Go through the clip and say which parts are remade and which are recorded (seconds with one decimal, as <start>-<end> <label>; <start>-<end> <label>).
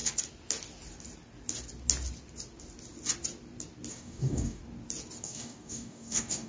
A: 0.0-3.9 recorded; 3.9-4.6 remade; 4.6-5.2 recorded; 5.2-6.5 remade